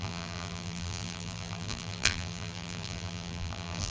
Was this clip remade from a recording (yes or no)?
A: yes